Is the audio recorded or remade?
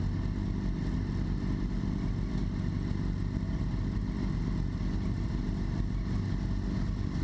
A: recorded